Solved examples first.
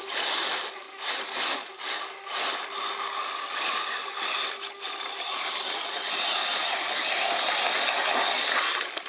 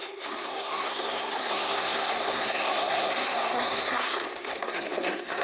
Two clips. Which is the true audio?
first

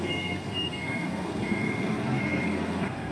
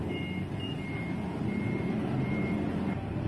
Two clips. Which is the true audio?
second